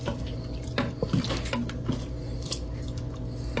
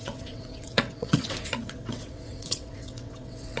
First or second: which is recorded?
first